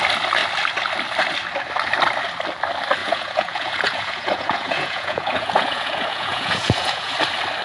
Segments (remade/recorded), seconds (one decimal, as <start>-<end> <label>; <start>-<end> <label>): 0.0-3.0 recorded; 3.0-7.1 remade; 7.1-7.6 recorded